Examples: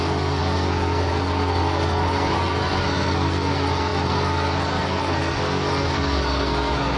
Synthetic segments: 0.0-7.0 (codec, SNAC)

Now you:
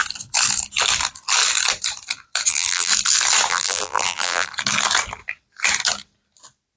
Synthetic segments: 2.5-2.9 (vocoder, BigVGAN v2); 3.5-4.5

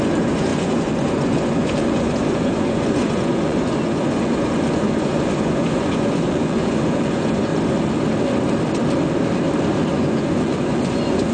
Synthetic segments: 0.0-7.5 (vocoder, Vocos); 9.9-11.3